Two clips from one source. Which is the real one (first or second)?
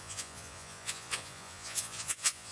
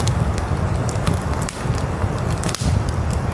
second